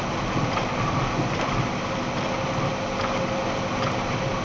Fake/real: real